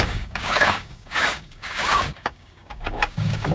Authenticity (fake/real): fake